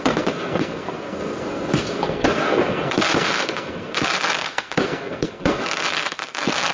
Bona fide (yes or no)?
no